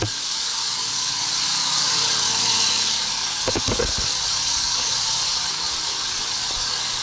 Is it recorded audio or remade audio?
remade